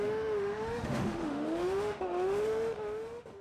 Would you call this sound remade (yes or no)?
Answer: yes